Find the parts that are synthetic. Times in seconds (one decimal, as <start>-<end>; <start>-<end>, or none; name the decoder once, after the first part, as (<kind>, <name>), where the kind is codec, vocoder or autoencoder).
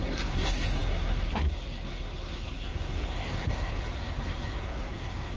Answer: 0.0-5.4 (codec, SNAC)